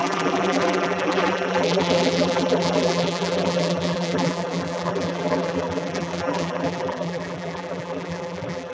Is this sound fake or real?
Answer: fake